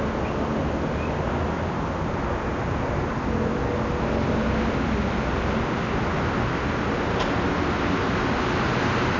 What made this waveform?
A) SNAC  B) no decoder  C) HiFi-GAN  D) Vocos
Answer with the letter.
B